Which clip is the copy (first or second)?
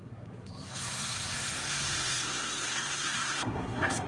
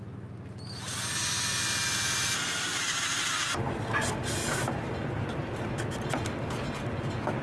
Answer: first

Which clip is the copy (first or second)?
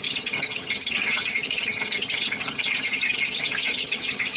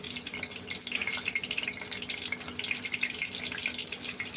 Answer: first